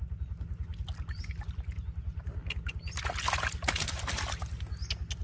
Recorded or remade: recorded